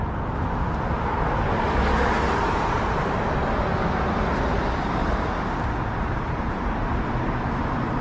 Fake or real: real